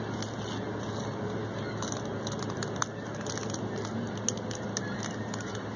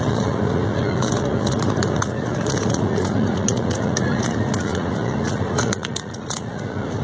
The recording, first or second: first